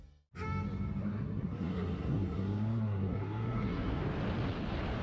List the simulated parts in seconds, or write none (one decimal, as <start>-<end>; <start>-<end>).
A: 1.0-4.0